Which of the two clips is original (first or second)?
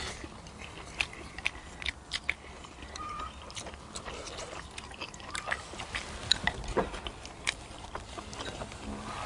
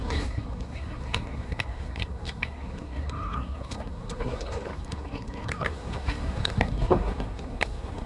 first